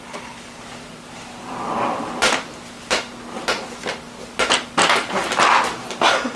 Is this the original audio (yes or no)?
yes